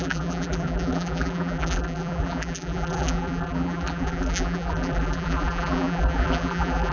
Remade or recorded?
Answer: remade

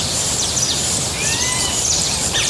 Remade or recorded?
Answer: remade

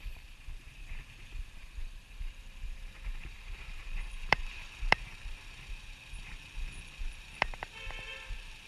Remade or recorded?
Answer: remade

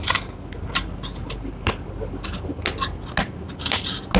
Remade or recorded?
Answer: recorded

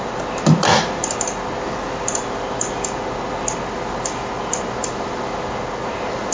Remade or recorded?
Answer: recorded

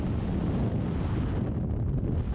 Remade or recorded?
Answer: recorded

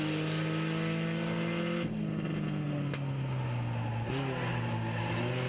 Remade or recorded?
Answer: recorded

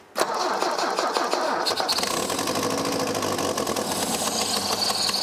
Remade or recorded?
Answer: recorded